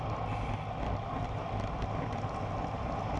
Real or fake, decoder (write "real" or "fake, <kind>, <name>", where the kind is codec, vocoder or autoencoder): real